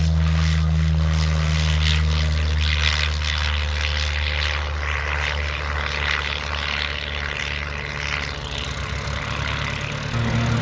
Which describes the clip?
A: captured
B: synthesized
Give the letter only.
A